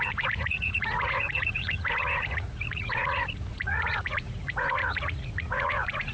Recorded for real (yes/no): no